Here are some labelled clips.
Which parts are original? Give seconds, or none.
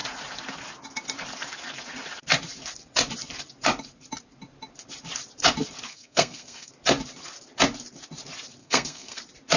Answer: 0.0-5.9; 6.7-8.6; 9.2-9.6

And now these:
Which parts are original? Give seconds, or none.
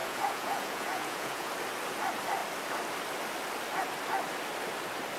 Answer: 1.5-5.2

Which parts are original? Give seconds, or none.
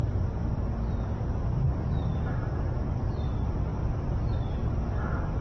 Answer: none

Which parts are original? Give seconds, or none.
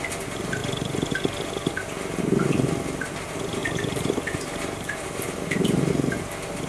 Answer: 0.0-3.6; 5.9-6.7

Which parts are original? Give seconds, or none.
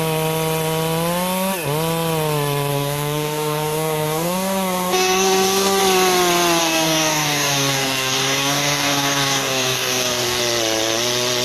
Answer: 0.0-2.7; 5.8-6.6; 10.4-11.4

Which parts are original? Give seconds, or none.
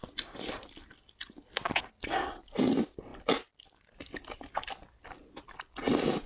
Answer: 0.0-6.3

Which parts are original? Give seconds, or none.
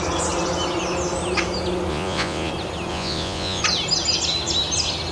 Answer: 0.0-1.9; 2.5-2.9; 3.6-5.1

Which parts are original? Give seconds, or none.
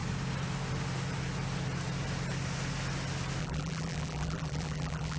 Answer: 0.0-3.4